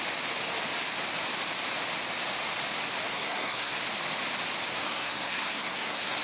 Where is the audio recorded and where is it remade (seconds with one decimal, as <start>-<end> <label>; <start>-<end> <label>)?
0.0-3.1 recorded; 3.1-3.8 remade; 3.8-4.7 recorded; 4.7-6.2 remade